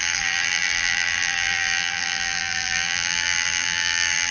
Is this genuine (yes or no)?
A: no